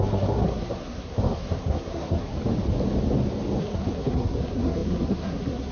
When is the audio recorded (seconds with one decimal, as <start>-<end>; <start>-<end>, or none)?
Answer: 2.3-3.6